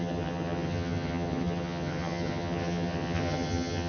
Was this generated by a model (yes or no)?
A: yes